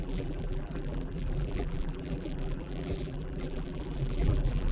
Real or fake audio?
fake